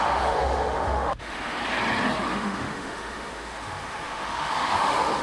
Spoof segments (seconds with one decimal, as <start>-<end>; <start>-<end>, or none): 0.0-1.6; 2.3-5.2